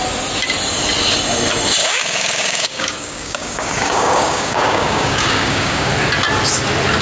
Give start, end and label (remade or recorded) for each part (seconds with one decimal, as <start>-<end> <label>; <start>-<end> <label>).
0.0-1.8 recorded; 1.8-5.9 remade; 5.9-7.0 recorded